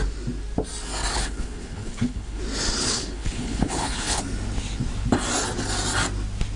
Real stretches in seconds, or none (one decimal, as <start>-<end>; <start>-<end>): 0.0-1.1; 2.4-2.8; 4.2-6.6